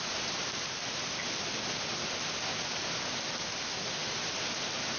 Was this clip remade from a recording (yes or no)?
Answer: no